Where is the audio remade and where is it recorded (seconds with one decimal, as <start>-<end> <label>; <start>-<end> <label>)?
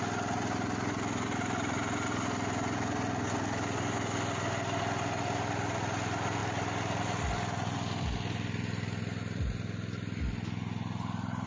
0.0-11.5 recorded